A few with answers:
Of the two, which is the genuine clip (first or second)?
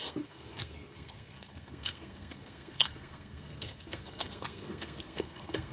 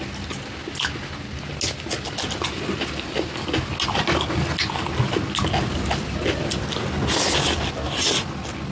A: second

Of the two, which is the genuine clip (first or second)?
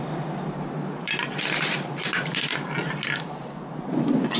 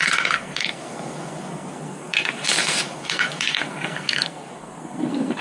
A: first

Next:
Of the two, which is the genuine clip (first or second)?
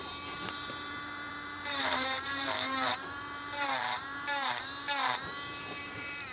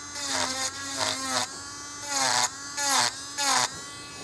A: second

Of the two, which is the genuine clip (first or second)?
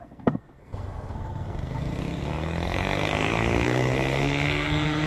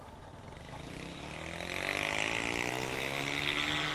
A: second